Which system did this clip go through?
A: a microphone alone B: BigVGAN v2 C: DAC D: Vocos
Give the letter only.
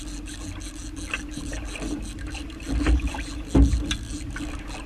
A